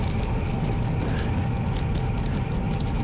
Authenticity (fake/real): real